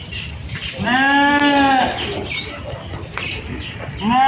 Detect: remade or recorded recorded